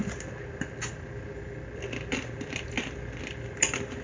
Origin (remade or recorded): recorded